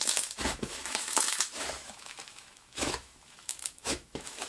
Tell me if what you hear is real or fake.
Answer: fake